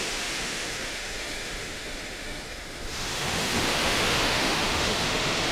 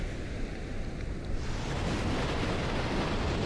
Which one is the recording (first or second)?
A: second